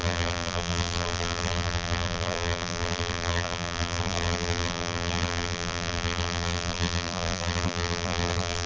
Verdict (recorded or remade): remade